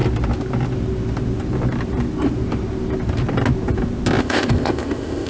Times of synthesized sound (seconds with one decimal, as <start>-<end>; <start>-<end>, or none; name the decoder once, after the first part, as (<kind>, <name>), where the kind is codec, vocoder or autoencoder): 4.2-5.3 (codec, ZipCodec)